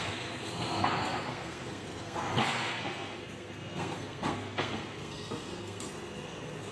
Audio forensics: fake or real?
fake